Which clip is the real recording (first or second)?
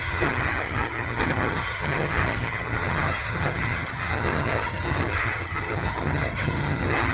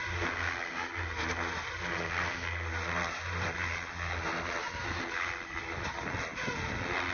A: second